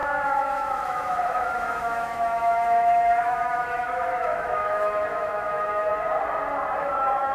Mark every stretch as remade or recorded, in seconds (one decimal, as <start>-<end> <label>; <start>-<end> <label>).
0.0-5.9 remade; 5.9-6.8 recorded; 6.8-7.3 remade